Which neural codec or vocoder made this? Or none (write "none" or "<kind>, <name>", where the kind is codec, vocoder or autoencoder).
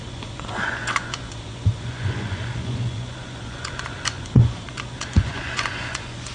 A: vocoder, Vocos